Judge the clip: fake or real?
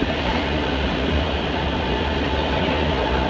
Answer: fake